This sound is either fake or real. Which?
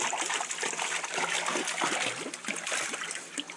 real